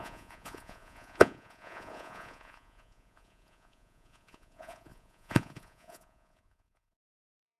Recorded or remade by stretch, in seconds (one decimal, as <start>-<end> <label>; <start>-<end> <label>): 0.0-7.6 remade